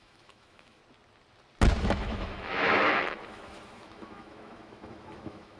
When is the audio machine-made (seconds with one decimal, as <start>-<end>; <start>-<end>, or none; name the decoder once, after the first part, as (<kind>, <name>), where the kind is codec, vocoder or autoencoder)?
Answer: 0.0-0.8 (autoencoder, DAC-VAE); 1.8-5.6

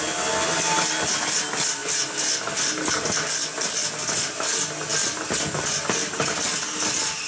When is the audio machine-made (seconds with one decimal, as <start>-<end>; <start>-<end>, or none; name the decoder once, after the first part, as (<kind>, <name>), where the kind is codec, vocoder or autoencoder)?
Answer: none

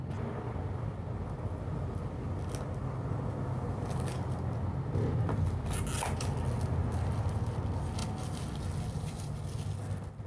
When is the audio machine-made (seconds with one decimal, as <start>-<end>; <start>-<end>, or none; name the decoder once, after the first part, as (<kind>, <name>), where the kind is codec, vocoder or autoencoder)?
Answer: none

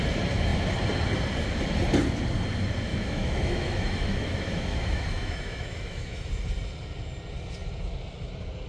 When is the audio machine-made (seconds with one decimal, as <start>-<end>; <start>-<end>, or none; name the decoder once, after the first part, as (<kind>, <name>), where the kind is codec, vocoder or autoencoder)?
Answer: 2.9-6.3 (autoencoder, DAC-VAE)